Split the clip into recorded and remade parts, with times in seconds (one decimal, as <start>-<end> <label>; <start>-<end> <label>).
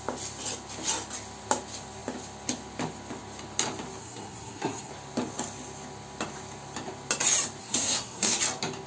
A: 0.0-4.0 recorded; 4.0-4.9 remade; 4.9-7.6 recorded; 7.6-8.4 remade; 8.4-8.9 recorded